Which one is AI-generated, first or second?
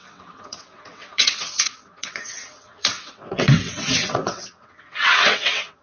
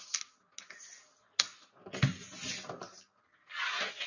first